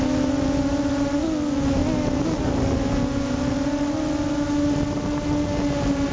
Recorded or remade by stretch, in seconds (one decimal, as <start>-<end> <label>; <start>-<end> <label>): 0.0-6.1 recorded